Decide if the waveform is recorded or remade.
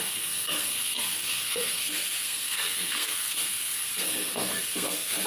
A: remade